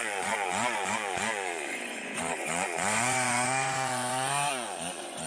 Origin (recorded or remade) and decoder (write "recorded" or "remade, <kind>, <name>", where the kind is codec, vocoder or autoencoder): remade, vocoder, Vocos